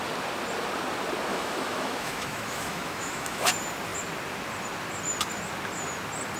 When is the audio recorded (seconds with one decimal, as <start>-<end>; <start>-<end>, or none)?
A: 0.0-1.3; 3.5-6.4